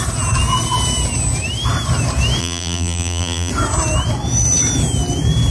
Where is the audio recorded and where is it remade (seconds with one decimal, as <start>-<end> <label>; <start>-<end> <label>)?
0.0-2.4 recorded; 2.4-3.5 remade; 3.5-5.5 recorded